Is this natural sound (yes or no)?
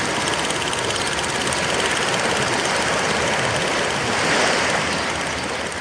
yes